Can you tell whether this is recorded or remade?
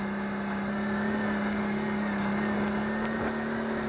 recorded